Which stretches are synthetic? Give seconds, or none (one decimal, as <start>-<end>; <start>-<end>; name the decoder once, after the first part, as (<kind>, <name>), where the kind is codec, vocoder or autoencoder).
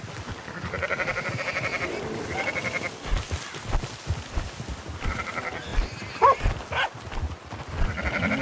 1.1-5.3 (vocoder, BigVGAN v2)